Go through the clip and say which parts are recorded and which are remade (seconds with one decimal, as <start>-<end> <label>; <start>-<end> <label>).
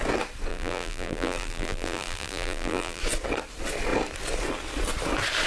0.0-0.5 recorded; 0.5-3.0 remade; 3.0-5.5 recorded